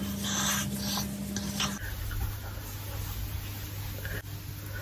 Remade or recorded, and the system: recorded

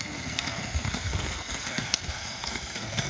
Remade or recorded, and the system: remade, codec, SNAC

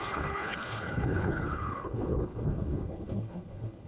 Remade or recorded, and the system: remade, codec, HILCodec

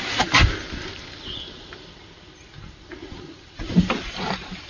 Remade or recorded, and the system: recorded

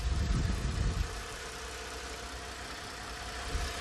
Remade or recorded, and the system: recorded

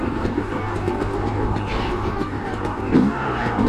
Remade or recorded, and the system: remade, codec, DAC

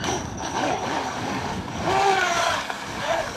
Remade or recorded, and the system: remade, codec, DAC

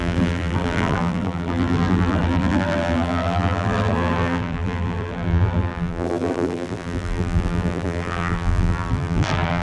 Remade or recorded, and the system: remade, vocoder, BigVGAN v2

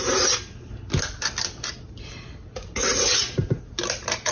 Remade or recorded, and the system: recorded